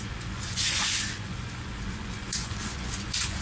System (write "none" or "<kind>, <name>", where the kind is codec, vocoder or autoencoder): vocoder, Vocos